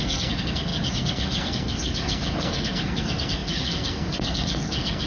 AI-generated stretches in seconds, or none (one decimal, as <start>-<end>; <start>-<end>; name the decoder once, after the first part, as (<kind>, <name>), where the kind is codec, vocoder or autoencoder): 0.0-5.1 (codec, SNAC)